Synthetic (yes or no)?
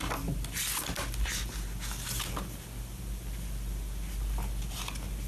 no